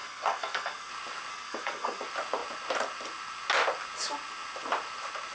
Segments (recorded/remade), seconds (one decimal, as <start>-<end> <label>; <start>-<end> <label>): 0.0-0.9 remade; 0.9-1.3 recorded; 1.3-2.0 remade; 2.0-5.3 recorded